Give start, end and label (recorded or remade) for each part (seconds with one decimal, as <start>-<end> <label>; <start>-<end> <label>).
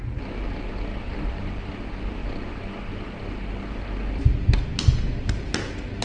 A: 0.0-0.9 recorded; 0.9-1.6 remade; 1.6-6.0 recorded